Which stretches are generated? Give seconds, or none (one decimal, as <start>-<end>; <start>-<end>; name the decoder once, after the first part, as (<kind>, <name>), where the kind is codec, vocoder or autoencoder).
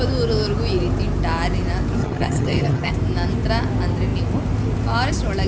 2.0-2.9 (vocoder, HiFi-GAN)